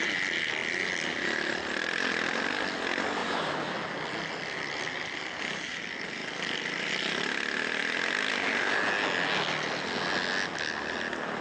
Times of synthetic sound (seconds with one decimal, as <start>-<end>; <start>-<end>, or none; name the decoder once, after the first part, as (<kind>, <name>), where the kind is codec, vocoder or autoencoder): none